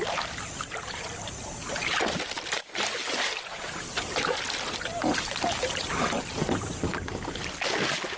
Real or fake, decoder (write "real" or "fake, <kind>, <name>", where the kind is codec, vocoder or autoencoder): real